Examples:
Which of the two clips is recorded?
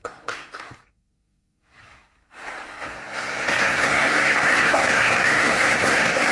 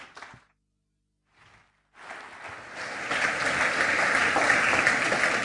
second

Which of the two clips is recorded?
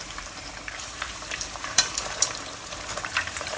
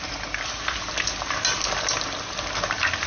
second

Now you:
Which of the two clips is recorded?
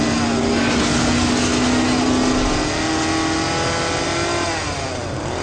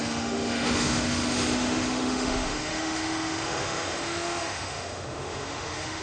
first